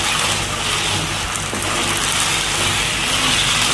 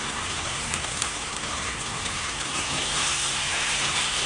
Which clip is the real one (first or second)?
first